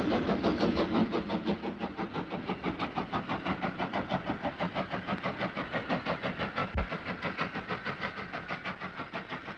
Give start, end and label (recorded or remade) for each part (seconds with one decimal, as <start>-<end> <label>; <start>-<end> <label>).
0.0-9.6 recorded